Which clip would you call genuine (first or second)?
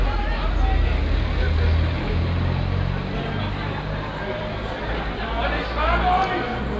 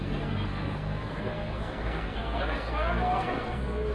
first